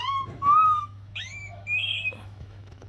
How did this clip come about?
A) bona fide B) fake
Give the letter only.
B